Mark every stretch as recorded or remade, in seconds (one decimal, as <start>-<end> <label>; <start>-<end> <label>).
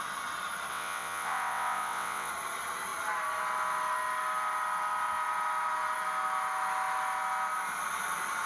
0.0-0.7 recorded; 0.7-2.3 remade; 2.3-8.5 recorded